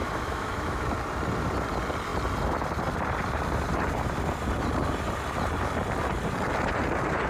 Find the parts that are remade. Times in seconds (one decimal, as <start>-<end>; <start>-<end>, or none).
0.0-0.9